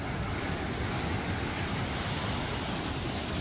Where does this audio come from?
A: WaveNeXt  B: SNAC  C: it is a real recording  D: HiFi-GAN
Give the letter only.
C